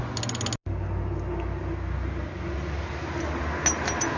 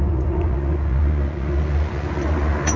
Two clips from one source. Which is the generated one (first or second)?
second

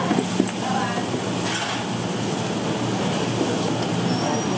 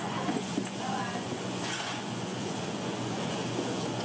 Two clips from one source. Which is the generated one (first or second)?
second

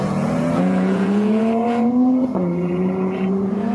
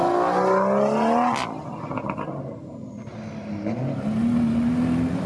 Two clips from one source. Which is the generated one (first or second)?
first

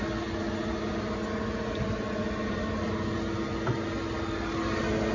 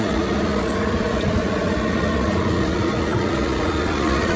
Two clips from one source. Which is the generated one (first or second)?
second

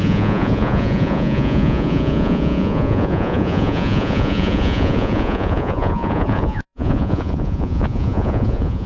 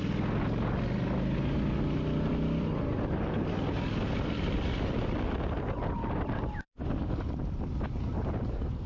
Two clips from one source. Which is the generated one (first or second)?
first